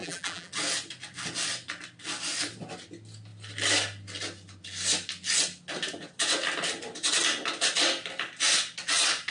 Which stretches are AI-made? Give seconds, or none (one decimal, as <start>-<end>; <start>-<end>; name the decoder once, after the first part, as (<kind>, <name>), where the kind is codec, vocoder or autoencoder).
0.0-0.5 (vocoder, BigVGAN v2)